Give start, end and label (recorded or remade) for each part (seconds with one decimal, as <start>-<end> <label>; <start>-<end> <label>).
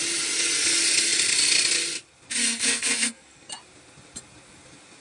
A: 0.0-2.4 recorded; 2.4-3.5 remade; 3.5-5.0 recorded